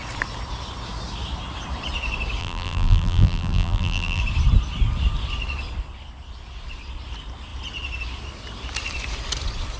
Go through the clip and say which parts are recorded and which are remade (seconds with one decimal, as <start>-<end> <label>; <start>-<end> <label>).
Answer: 0.0-2.4 recorded; 2.4-4.2 remade; 4.2-9.8 recorded